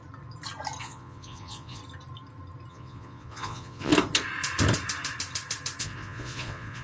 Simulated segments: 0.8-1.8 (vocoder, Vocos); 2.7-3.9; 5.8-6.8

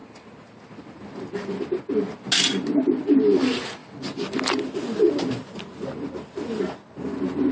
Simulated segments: 0.0-1.8 (vocoder, BigVGAN v2); 3.8-6.6

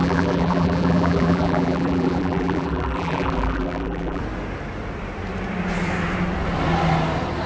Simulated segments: 0.0-4.2 (vocoder, BigVGAN v2)

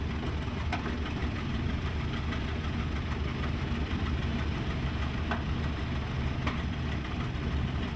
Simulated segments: 1.2-1.9 (vocoder, BigVGAN v2)